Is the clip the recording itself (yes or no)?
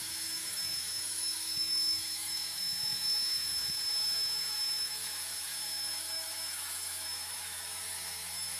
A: no